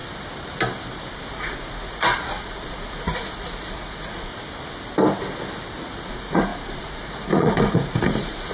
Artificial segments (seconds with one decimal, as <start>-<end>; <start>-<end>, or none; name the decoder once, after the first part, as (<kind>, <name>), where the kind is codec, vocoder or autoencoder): 1.3-4.3 (vocoder, Vocos); 6.1-8.5